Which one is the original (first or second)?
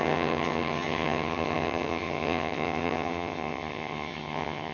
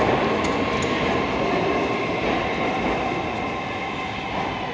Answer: second